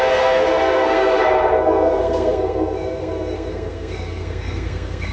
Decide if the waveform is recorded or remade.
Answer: remade